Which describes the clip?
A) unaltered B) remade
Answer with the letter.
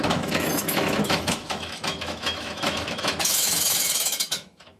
B